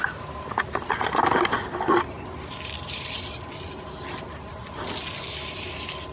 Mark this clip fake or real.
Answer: real